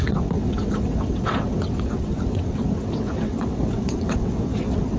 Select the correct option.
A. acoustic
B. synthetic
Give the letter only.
B